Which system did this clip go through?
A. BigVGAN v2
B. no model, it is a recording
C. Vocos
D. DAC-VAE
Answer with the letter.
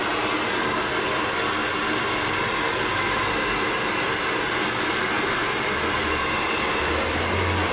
B